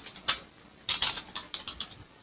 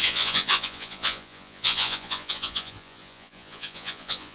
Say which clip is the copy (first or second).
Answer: second